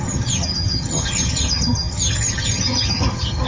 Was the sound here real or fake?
fake